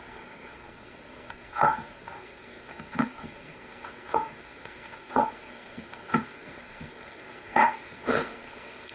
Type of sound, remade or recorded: remade